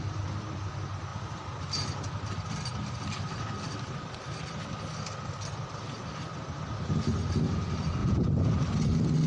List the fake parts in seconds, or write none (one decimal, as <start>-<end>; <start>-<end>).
8.0-8.5